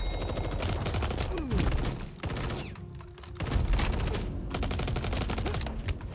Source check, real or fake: real